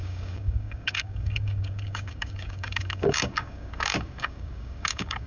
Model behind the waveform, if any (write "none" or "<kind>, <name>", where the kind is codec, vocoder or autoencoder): codec, DAC